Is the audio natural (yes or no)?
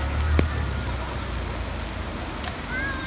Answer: yes